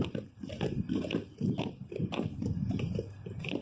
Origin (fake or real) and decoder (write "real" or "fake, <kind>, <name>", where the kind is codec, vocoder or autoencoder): real